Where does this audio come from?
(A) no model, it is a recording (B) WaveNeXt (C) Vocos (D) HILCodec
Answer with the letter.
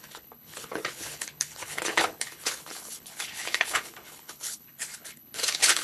D